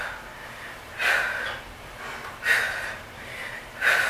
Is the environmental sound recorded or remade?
recorded